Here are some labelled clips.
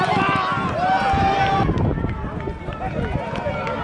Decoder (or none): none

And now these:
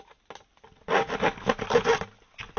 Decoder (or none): none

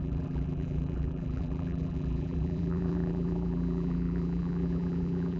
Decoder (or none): vocoder, BigVGAN v2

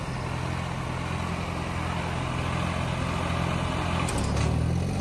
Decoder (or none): none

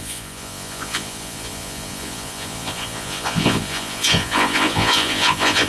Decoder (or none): vocoder, Vocos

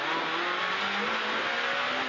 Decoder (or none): none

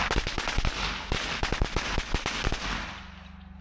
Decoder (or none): none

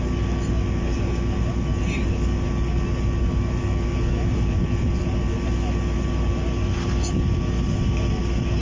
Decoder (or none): none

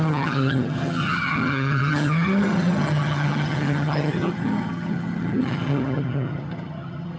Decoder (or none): vocoder, HiFi-GAN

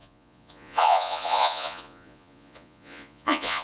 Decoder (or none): vocoder, Vocos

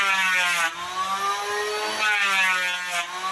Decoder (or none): none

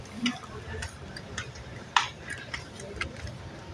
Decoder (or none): none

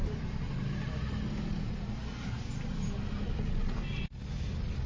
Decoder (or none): none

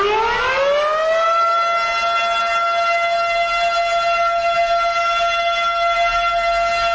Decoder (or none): none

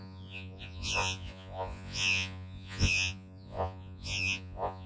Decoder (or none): vocoder, Vocos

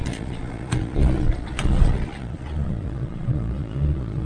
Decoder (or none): vocoder, Vocos